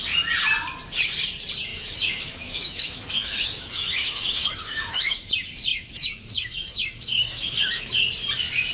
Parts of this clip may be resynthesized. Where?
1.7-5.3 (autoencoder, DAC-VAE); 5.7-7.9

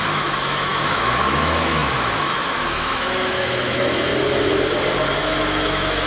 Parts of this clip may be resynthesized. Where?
0.0-4.1 (autoencoder, DAC-VAE); 5.2-6.1

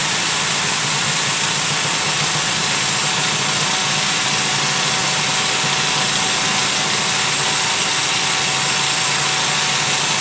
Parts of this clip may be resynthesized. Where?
none

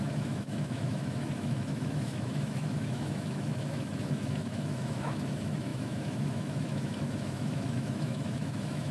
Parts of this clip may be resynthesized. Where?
0.0-8.9 (autoencoder, DAC-VAE)

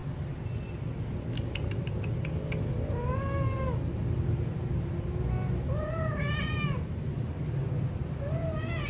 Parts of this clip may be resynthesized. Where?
none

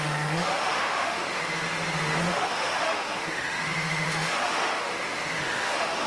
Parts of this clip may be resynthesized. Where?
0.0-1.4 (autoencoder, DAC-VAE); 2.3-6.1